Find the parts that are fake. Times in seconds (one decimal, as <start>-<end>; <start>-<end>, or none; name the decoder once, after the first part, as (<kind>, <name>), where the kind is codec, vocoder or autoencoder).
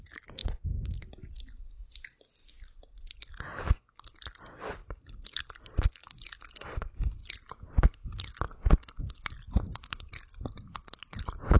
none